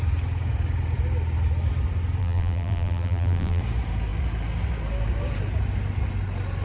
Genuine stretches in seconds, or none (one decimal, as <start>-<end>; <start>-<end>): 0.0-2.2; 3.6-6.6

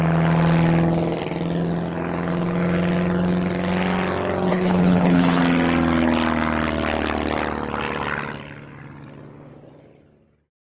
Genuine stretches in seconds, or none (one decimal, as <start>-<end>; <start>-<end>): 0.0-4.5; 5.4-10.7